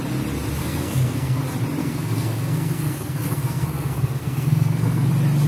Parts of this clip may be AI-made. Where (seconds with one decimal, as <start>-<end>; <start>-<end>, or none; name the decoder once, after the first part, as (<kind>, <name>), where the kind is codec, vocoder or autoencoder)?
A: 0.6-1.4 (codec, SNAC); 1.8-5.1